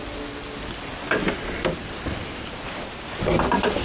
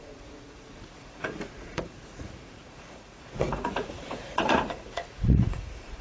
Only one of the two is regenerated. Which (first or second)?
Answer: second